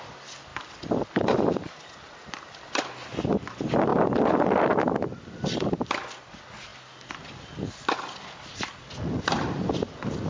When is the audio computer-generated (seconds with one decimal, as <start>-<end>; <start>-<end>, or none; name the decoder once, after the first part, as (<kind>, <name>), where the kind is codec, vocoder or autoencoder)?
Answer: none